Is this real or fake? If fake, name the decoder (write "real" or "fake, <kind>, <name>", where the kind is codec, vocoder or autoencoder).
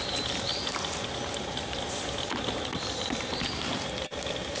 real